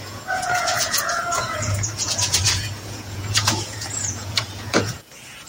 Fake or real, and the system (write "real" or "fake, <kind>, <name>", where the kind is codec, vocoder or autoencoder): fake, vocoder, Vocos